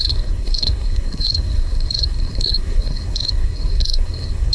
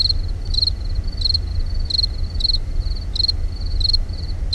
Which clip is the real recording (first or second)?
second